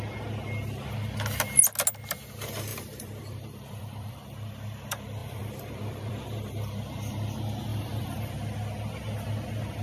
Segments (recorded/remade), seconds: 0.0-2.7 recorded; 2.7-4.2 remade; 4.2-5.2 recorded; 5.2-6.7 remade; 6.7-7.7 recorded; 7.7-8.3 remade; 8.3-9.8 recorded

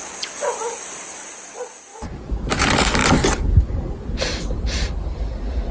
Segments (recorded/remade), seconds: 0.0-1.9 recorded; 1.9-2.5 remade; 2.5-3.0 recorded; 3.0-5.3 remade; 5.3-5.7 recorded

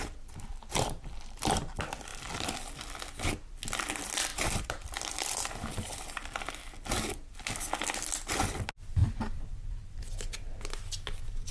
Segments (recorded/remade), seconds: 0.0-0.5 recorded; 0.5-1.4 remade; 1.4-2.1 recorded; 2.1-2.7 remade; 2.7-4.3 recorded; 4.3-6.5 remade; 6.5-9.0 recorded; 9.0-10.8 remade; 10.8-11.5 recorded

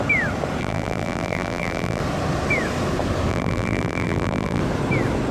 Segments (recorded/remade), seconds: 0.0-0.6 recorded; 0.6-2.0 remade; 2.0-3.3 recorded; 3.3-4.6 remade; 4.6-5.3 recorded

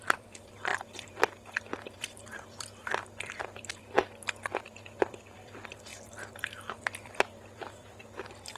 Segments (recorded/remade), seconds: 0.0-3.8 remade; 3.8-5.0 recorded; 5.0-8.6 remade

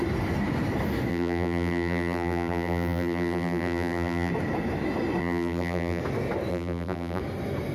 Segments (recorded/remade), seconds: 0.0-1.1 recorded; 1.1-4.3 remade; 4.3-5.2 recorded; 5.2-6.0 remade; 6.0-6.5 recorded; 6.5-7.2 remade; 7.2-7.7 recorded

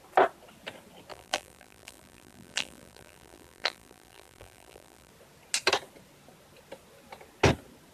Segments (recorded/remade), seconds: 0.0-1.1 recorded; 1.1-5.1 remade; 5.1-7.9 recorded

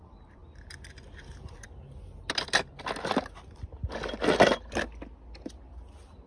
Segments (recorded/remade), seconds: 0.0-6.3 recorded